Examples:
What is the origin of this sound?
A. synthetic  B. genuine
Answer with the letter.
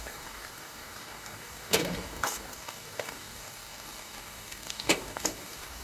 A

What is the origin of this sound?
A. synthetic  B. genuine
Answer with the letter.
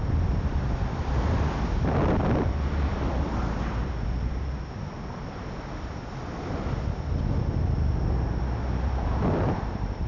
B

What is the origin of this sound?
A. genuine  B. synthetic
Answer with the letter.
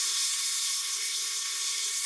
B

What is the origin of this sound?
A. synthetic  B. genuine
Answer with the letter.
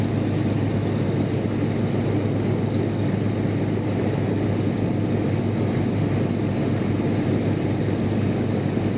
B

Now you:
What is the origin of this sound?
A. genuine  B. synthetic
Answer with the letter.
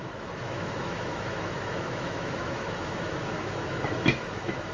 B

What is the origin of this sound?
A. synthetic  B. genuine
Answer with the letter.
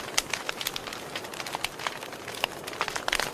B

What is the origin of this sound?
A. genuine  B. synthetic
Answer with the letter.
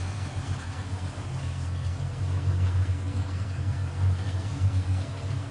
B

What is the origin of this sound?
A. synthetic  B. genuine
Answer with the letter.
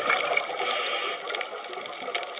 B